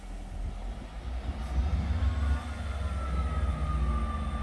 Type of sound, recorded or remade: recorded